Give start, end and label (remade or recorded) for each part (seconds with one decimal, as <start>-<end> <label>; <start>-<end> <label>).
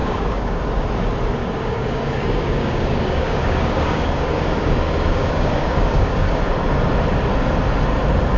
0.0-0.6 remade; 0.6-1.4 recorded; 1.4-6.4 remade; 6.4-8.4 recorded